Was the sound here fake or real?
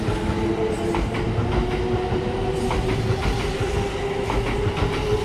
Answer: real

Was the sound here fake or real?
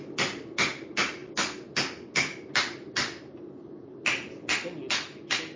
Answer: real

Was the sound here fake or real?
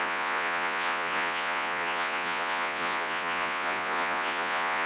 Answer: fake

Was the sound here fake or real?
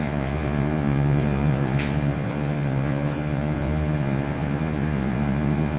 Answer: fake